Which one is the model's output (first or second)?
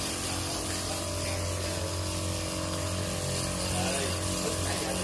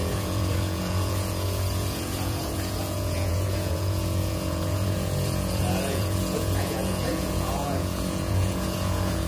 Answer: second